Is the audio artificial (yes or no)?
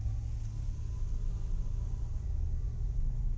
no